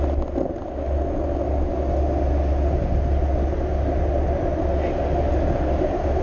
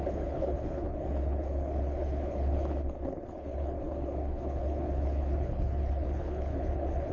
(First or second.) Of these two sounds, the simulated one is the second